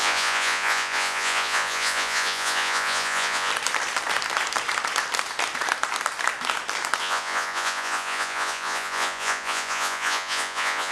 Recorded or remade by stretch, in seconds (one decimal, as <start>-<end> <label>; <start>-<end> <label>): 0.0-3.5 remade; 3.5-7.0 recorded; 7.0-10.9 remade